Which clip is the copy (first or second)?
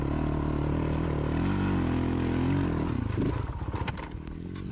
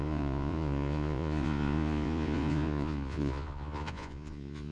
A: second